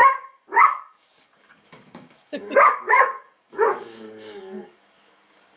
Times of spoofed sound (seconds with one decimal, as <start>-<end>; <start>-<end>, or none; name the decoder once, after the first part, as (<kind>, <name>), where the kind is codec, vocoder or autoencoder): 0.0-5.6 (codec, DAC)